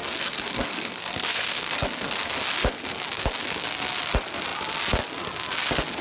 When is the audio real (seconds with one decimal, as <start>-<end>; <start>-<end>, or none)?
2.4-6.0